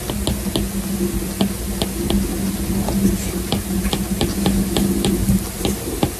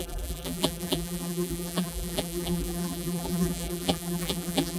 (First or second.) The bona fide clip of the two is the first